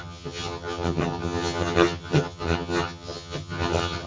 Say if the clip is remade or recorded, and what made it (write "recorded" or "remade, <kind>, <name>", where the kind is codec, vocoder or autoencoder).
remade, vocoder, HiFi-GAN